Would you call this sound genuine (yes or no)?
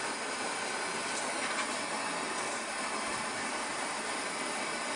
yes